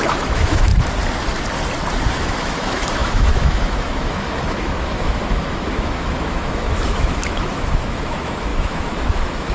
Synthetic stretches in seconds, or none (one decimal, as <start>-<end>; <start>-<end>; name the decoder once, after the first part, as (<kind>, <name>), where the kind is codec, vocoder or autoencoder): 0.0-0.7 (autoencoder, DAC-VAE); 2.1-9.5